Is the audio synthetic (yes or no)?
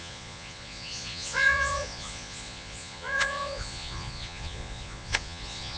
yes